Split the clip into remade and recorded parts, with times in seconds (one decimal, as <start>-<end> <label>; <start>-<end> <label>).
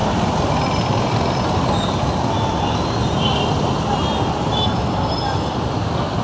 0.0-6.2 recorded